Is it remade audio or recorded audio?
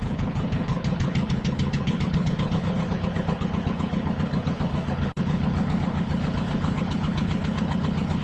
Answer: remade